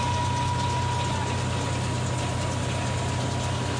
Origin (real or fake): real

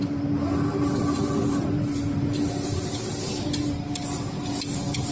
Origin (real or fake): real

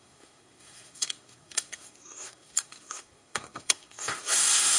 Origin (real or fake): fake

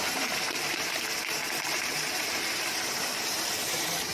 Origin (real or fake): fake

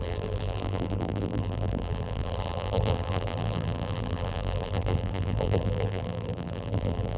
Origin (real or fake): fake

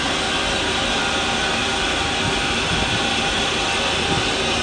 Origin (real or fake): real